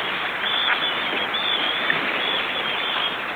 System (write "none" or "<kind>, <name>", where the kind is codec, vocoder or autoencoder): none